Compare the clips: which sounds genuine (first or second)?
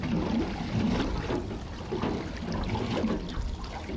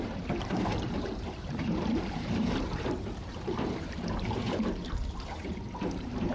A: first